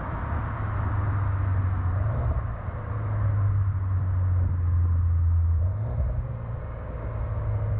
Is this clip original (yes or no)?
yes